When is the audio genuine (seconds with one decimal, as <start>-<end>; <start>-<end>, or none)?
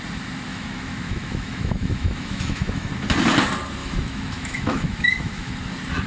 0.0-0.5; 2.9-3.8; 5.5-6.1